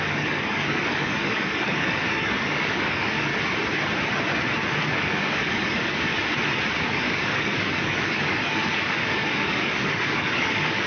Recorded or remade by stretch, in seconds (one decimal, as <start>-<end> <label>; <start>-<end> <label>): 0.0-3.3 remade; 3.3-4.7 recorded; 4.7-6.1 remade; 6.1-6.8 recorded; 6.8-10.9 remade